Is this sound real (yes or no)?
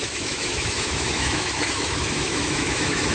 no